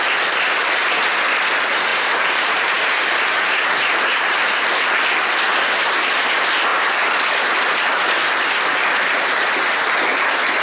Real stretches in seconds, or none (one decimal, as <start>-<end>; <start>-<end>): 0.0-1.9; 4.5-10.6